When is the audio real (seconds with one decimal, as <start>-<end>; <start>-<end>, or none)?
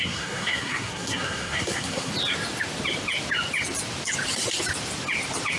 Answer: 2.1-5.6